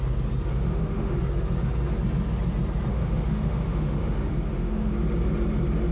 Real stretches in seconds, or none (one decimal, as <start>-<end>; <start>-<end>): 0.0-0.5; 1.2-2.9; 4.9-5.9